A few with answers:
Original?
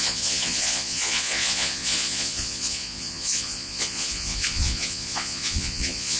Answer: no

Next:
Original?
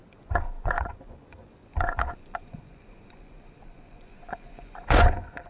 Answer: no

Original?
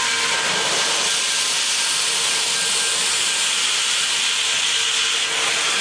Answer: yes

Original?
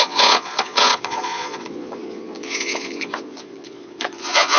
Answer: no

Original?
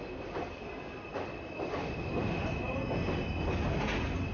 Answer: yes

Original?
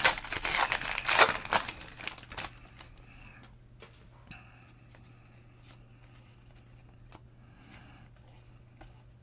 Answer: yes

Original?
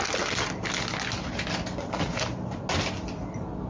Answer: yes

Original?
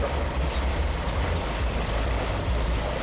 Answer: yes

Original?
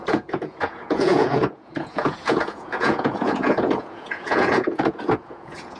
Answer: no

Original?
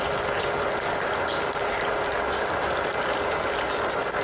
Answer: yes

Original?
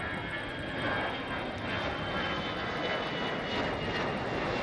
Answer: yes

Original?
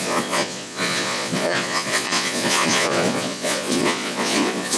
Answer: no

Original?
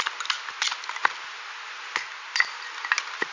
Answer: yes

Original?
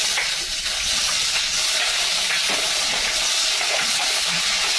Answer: no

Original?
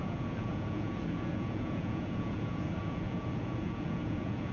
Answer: no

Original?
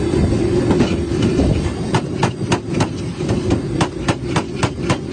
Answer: yes